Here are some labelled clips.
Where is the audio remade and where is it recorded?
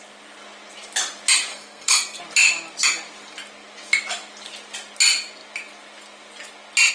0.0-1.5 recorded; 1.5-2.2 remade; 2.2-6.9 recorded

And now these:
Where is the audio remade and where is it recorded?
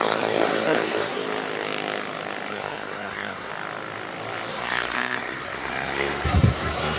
0.0-1.2 remade; 1.2-2.5 recorded; 2.5-3.5 remade; 3.5-4.5 recorded; 4.5-7.0 remade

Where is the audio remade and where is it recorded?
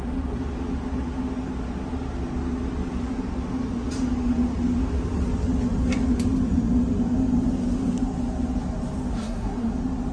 0.0-9.1 recorded; 9.1-9.7 remade; 9.7-10.1 recorded